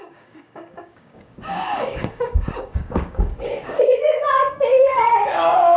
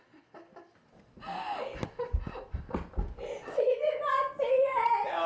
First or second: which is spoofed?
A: first